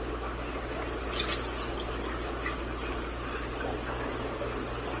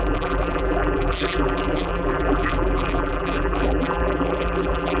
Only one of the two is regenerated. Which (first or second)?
second